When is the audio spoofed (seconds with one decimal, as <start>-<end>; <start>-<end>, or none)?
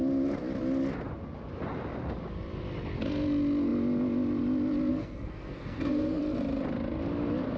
4.9-6.2